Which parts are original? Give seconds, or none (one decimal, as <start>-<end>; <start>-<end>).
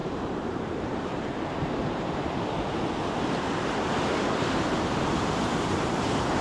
1.7-3.5